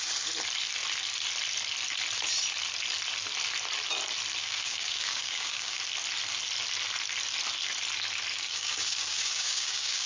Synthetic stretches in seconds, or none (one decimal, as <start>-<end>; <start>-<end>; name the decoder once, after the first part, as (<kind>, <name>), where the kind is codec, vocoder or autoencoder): 4.4-5.8 (codec, DAC); 8.3-10.1